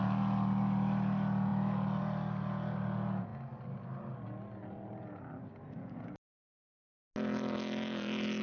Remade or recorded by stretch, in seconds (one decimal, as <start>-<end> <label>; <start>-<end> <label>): 0.0-8.4 recorded